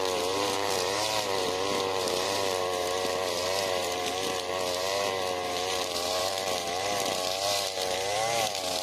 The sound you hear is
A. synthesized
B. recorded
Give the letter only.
A